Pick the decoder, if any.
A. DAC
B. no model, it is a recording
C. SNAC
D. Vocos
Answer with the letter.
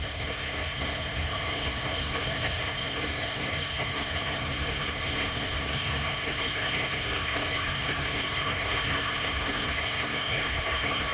C